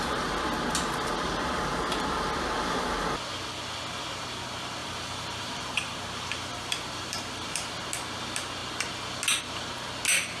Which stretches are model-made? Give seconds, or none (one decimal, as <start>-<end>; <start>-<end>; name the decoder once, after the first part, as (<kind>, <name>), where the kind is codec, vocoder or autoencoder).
4.8-7.8 (vocoder, BigVGAN v2)